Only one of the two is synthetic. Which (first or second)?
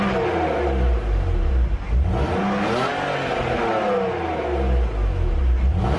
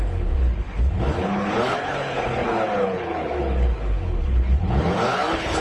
second